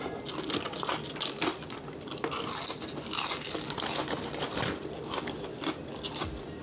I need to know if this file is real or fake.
real